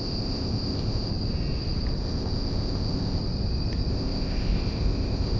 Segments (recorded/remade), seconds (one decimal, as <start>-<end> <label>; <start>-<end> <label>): 0.0-1.1 remade; 1.1-2.0 recorded; 2.0-3.2 remade; 3.2-3.9 recorded; 3.9-5.4 remade